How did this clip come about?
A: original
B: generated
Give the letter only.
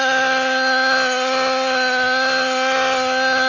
A